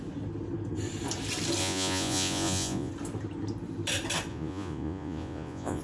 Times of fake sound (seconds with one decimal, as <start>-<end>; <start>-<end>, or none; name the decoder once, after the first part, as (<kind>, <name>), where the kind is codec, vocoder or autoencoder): 1.6-2.9 (vocoder, Vocos); 4.3-5.8